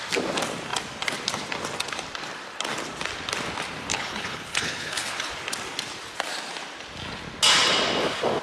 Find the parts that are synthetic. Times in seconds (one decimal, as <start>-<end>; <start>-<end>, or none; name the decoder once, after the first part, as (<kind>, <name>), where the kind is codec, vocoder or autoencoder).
3.9-5.3 (codec, HILCodec)